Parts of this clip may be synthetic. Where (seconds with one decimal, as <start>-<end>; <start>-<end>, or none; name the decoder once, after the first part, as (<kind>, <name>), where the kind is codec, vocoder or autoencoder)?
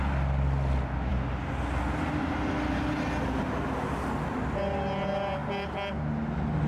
none